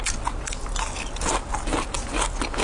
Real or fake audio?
real